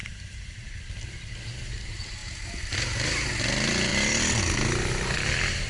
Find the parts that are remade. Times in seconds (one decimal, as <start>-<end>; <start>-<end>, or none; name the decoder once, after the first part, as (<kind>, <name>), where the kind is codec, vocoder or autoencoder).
0.0-0.8 (vocoder, BigVGAN v2); 2.2-3.3